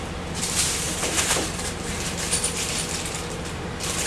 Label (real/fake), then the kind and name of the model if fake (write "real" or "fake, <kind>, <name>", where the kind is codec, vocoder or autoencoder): fake, vocoder, BigVGAN v2